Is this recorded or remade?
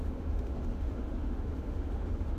remade